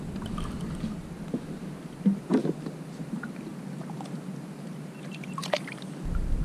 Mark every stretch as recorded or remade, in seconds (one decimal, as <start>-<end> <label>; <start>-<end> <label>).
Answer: 0.0-6.4 recorded